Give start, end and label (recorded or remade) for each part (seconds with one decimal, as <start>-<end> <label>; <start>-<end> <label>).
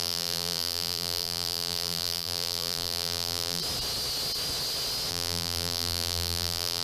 0.0-3.6 remade; 3.6-5.1 recorded; 5.1-6.8 remade